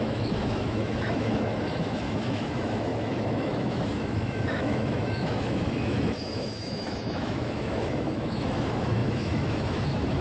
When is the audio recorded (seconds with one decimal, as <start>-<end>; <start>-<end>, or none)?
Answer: none